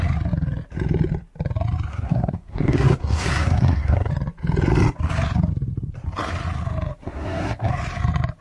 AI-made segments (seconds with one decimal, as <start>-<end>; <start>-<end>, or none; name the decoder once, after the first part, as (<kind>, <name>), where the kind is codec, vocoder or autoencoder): 1.9-4.1 (codec, SNAC); 7.0-7.7